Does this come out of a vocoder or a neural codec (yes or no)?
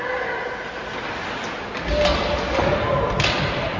no